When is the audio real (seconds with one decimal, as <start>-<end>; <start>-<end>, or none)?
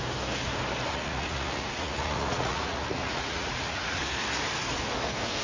0.0-0.9; 4.0-5.4